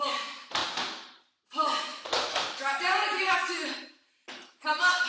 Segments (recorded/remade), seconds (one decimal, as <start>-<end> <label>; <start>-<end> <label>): 0.0-0.6 recorded; 0.6-1.5 remade; 1.5-1.9 recorded; 1.9-5.1 remade

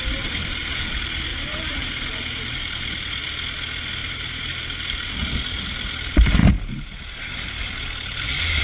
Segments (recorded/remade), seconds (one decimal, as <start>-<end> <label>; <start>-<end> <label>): 0.0-1.3 recorded; 1.3-3.2 remade; 3.2-4.0 recorded; 4.0-5.1 remade; 5.1-6.4 recorded; 6.4-8.6 remade

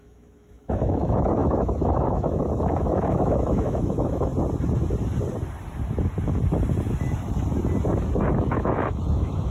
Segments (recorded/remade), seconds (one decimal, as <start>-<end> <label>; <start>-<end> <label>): 0.0-4.3 remade; 4.3-8.5 recorded; 8.5-9.5 remade

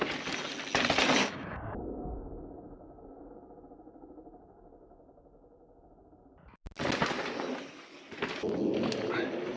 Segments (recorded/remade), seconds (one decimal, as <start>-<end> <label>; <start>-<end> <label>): 0.0-1.2 recorded; 1.2-3.2 remade; 3.2-9.6 recorded

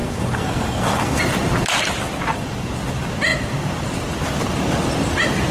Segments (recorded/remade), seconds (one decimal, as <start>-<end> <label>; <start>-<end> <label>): 0.0-1.2 remade; 1.2-5.5 recorded

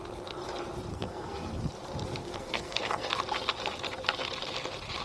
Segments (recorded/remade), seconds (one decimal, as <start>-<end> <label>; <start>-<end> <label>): 0.0-0.9 recorded; 0.9-1.7 remade; 1.7-2.2 recorded; 2.2-3.1 remade; 3.1-5.0 recorded